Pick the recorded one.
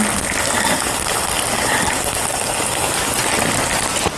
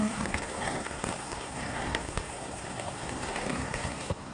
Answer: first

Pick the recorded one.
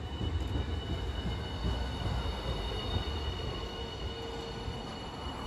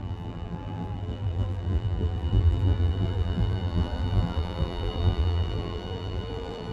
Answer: first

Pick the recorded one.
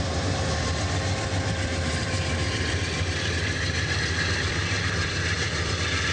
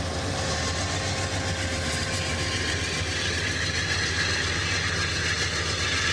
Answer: second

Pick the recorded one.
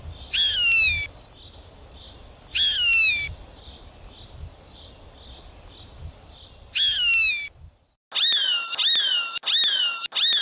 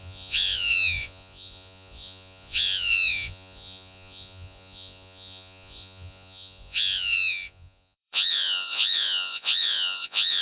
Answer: first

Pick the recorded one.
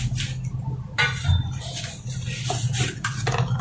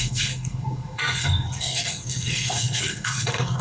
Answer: first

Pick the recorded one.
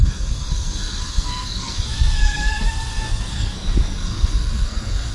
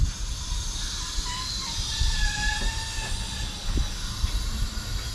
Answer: second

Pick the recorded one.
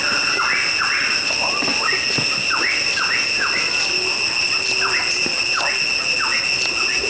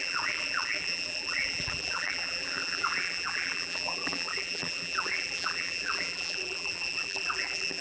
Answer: first